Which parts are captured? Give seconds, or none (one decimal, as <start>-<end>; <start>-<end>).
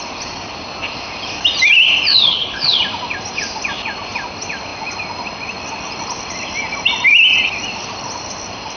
0.0-2.1; 2.8-8.8